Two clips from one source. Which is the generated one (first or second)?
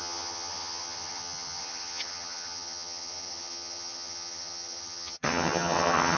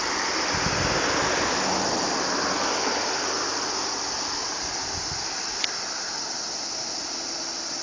first